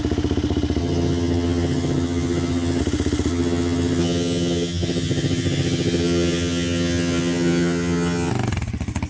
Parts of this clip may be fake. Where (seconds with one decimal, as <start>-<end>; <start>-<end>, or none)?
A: 0.8-2.8; 3.3-8.3